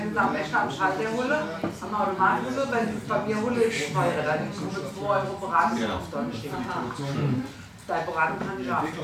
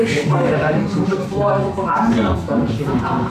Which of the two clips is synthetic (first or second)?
second